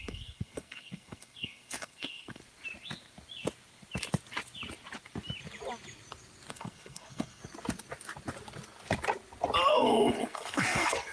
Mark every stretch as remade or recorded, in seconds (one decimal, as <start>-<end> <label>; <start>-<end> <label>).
0.0-2.4 remade; 2.4-6.5 recorded; 6.5-7.4 remade; 7.4-9.7 recorded; 9.7-11.1 remade